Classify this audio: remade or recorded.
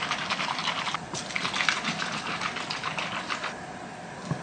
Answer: recorded